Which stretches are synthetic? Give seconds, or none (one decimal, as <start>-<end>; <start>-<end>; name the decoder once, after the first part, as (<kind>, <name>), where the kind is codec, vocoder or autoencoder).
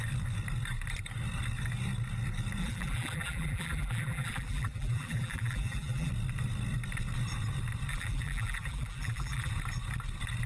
2.6-6.1 (vocoder, BigVGAN v2); 7.9-9.5